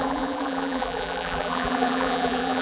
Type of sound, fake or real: fake